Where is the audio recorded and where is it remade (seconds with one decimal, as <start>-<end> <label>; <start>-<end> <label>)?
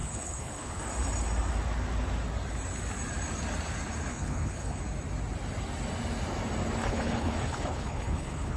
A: 0.0-0.8 remade; 0.8-4.1 recorded; 4.1-4.8 remade; 4.8-6.8 recorded; 6.8-8.6 remade